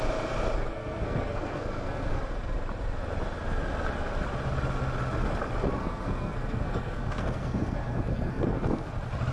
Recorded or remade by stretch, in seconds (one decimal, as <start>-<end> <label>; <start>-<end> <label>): 0.0-0.7 recorded; 0.7-2.2 remade; 2.2-5.8 recorded; 5.8-8.9 remade; 8.9-9.3 recorded